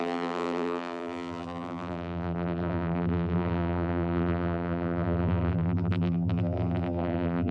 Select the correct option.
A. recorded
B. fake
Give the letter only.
B